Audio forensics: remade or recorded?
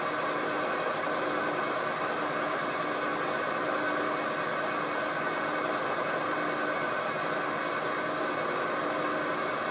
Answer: recorded